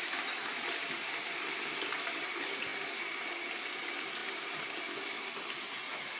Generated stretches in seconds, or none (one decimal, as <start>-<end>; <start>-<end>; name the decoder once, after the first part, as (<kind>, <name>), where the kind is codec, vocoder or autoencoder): 0.5-2.3 (vocoder, BigVGAN v2); 4.2-4.8